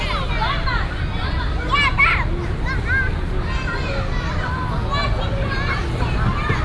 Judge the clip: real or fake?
real